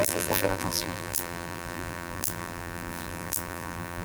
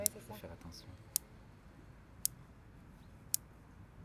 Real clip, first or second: second